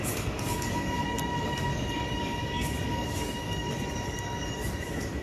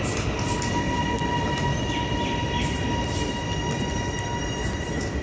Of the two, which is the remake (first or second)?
first